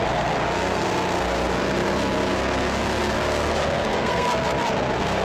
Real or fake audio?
fake